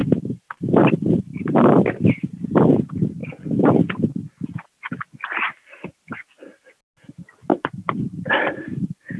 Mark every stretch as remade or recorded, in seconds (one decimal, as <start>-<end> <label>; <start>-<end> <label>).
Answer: 0.0-2.4 remade; 2.4-7.5 recorded; 7.5-9.2 remade